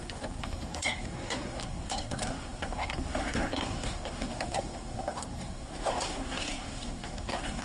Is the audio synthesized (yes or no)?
yes